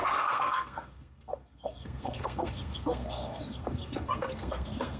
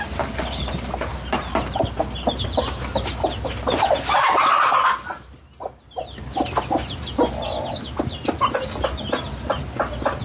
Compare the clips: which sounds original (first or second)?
second